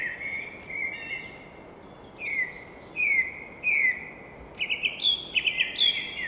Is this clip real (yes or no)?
yes